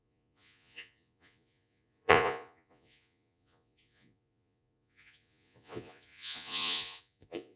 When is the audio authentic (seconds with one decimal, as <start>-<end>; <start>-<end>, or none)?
none